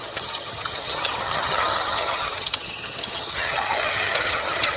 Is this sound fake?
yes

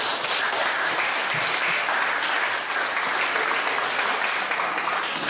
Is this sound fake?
no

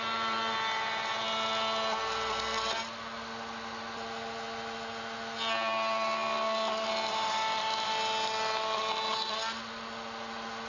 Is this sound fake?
no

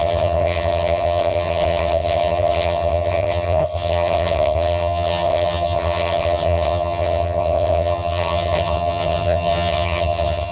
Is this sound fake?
yes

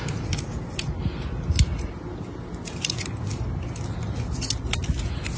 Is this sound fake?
no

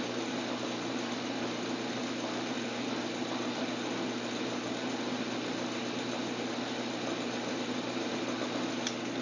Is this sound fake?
no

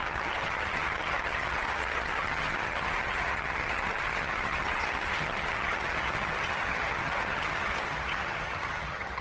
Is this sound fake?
yes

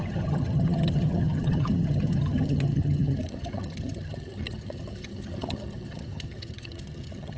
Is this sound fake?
yes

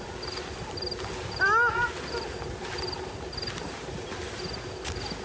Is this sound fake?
no